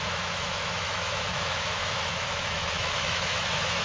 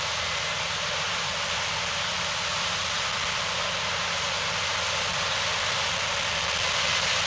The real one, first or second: second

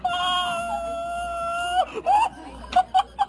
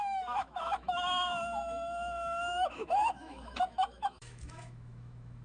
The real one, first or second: first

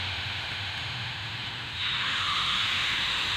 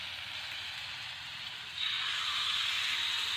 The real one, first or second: second